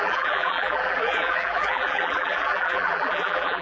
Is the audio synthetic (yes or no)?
yes